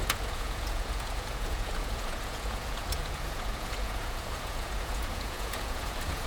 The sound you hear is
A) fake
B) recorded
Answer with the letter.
A